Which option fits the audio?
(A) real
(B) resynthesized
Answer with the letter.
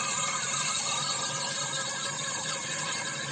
B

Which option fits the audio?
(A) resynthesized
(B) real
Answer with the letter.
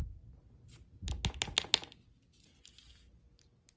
B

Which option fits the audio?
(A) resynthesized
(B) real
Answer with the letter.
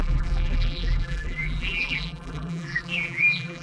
A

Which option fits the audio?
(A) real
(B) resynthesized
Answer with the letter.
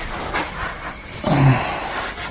B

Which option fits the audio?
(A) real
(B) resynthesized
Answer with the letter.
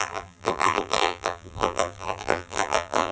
B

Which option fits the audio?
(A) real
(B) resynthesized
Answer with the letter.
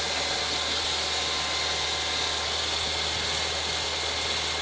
A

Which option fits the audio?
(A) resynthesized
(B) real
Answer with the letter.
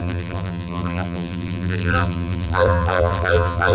A